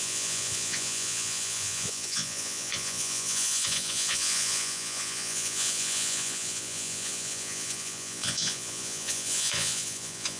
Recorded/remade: remade